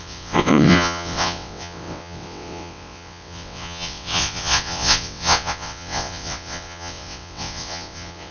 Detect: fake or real fake